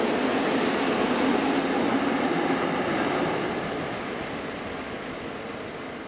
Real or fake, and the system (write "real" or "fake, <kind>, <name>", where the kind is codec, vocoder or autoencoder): real